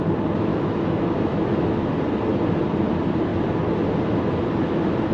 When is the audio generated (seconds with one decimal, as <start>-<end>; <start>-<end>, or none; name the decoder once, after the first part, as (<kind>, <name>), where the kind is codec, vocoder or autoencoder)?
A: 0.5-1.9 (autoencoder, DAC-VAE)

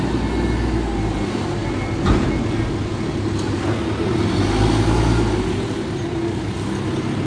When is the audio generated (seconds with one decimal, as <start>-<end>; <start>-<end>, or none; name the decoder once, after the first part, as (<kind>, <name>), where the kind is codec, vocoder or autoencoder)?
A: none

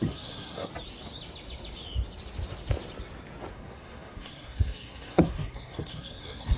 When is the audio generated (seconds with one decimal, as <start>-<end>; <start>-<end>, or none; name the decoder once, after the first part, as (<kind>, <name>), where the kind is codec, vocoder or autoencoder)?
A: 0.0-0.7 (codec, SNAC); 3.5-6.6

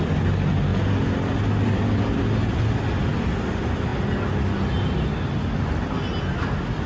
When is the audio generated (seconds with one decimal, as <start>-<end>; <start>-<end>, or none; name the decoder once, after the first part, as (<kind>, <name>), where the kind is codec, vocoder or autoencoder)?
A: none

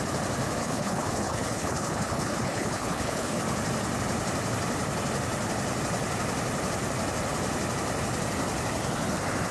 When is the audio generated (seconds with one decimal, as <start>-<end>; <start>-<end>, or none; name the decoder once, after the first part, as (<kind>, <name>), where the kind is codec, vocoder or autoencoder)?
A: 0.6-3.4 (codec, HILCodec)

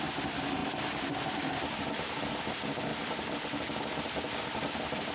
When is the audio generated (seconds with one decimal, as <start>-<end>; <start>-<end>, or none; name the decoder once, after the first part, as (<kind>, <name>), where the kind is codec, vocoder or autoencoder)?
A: none